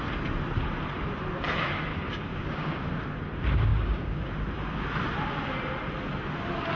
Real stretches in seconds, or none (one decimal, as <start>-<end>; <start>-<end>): 0.0-1.9; 2.8-3.7; 4.3-6.8

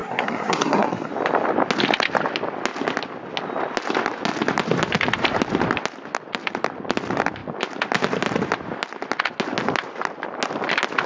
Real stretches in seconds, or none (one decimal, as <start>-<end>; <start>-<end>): 1.1-11.1

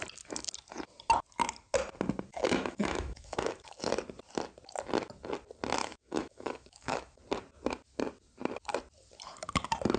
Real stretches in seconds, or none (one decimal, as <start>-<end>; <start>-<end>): 0.0-2.3; 3.9-5.8; 7.2-10.0

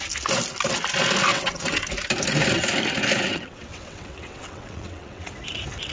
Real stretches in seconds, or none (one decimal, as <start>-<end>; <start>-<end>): 0.0-1.3; 1.8-3.3; 5.3-5.9

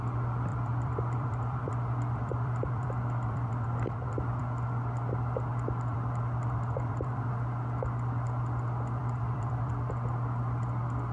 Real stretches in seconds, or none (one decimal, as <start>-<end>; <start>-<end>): 0.0-0.5; 4.4-5.9; 7.3-9.0; 9.7-11.1

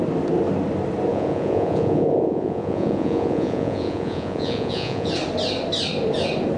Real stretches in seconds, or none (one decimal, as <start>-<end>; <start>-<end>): 0.0-1.1; 5.1-6.6

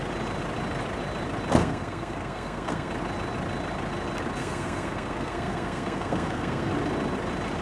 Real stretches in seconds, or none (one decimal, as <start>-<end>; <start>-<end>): 0.0-1.6; 2.9-4.4; 6.7-7.6